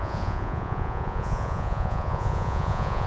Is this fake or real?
fake